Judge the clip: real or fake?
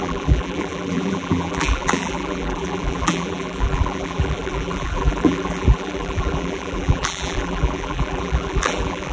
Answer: fake